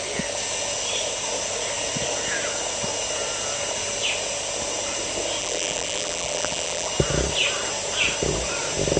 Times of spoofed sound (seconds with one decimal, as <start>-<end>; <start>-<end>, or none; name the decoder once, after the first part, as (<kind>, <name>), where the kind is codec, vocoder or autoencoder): 5.4-6.9 (vocoder, BigVGAN v2)